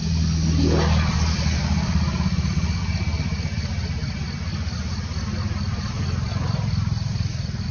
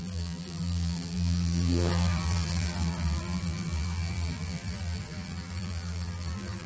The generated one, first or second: second